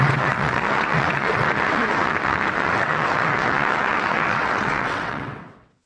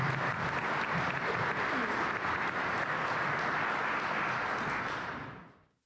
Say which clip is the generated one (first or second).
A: first